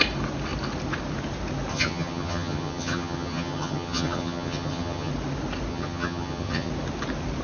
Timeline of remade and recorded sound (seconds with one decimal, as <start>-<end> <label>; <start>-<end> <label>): 0.0-1.7 recorded; 1.7-5.1 remade; 5.1-5.7 recorded; 5.7-6.7 remade; 6.7-7.4 recorded